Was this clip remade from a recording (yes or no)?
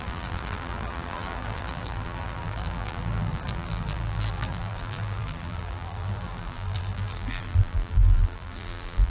yes